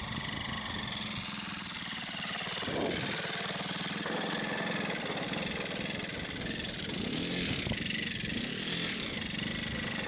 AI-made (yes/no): no